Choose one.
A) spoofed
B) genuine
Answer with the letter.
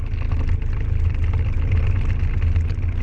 B